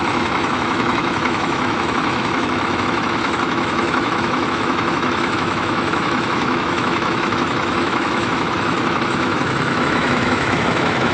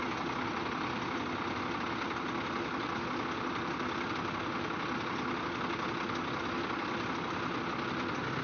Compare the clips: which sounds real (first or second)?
second